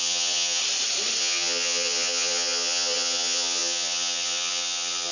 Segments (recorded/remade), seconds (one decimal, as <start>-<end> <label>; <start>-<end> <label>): 0.0-0.6 remade; 0.6-1.2 recorded; 1.2-5.1 remade